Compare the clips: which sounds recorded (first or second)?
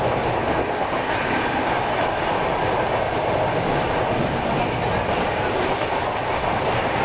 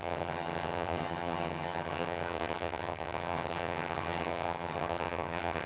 first